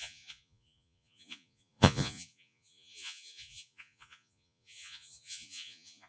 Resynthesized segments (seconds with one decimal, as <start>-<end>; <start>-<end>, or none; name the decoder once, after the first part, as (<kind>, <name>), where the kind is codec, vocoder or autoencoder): 0.0-6.1 (vocoder, Vocos)